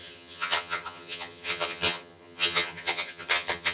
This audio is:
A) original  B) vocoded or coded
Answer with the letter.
B